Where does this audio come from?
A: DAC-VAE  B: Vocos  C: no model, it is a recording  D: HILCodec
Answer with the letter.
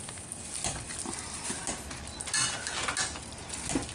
C